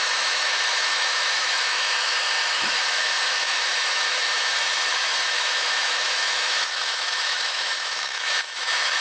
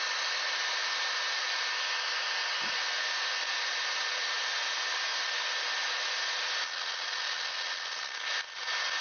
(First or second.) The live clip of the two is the second